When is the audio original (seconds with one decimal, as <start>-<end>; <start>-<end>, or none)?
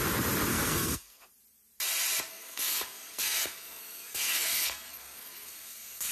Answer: 0.0-0.5; 1.3-2.3